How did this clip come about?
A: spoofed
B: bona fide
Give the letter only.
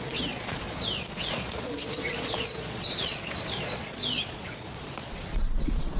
A